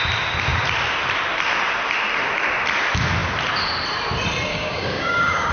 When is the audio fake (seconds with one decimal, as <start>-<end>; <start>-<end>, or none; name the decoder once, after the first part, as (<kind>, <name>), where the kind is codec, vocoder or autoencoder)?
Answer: 4.5-5.5 (codec, DAC)